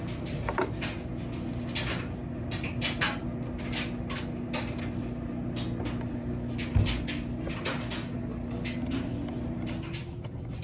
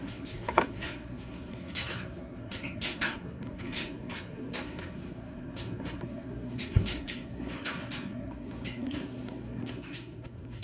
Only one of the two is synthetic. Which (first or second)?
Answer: second